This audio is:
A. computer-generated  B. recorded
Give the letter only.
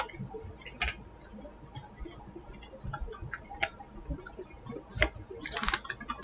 B